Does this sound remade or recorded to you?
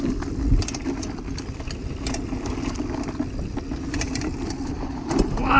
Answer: recorded